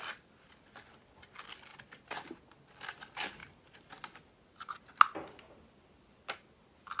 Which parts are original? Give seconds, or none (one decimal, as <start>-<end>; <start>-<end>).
0.0-7.0